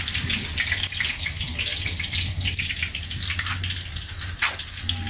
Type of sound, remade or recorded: recorded